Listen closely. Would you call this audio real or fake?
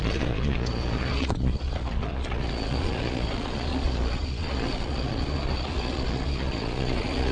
fake